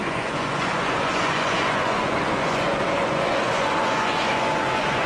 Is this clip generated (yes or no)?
yes